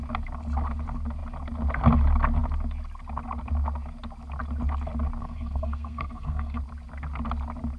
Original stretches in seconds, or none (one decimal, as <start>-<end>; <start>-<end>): 0.0-5.2; 6.6-7.8